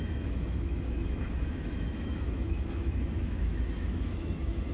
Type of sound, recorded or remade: remade